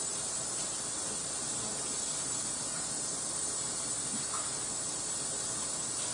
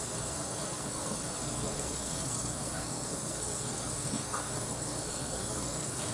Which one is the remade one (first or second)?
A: second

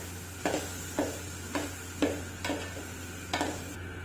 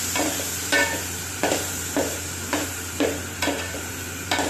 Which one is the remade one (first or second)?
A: second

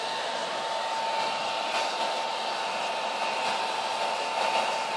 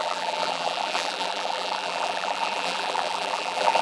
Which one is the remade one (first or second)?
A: second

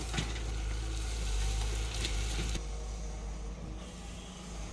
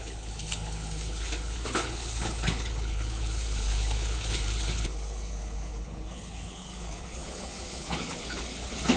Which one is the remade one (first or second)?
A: second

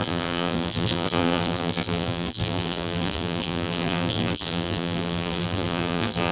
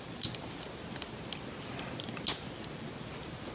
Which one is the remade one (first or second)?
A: first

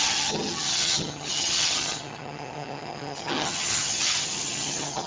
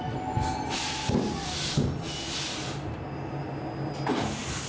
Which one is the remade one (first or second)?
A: first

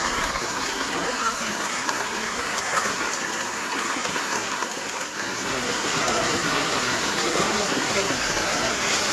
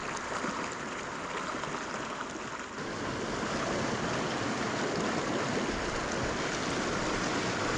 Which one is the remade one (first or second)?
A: first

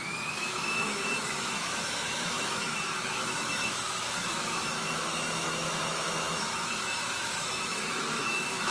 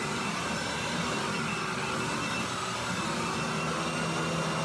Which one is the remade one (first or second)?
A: first